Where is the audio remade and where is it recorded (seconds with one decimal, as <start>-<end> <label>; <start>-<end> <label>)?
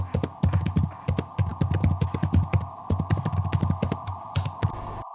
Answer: 0.0-5.1 recorded